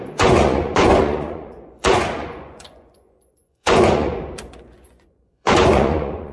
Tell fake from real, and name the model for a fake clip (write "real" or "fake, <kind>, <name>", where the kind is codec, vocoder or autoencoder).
fake, vocoder, Vocos